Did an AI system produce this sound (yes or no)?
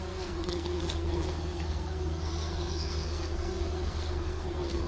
yes